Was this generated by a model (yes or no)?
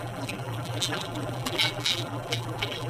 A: yes